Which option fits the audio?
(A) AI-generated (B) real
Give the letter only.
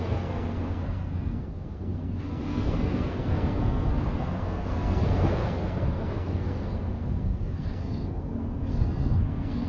A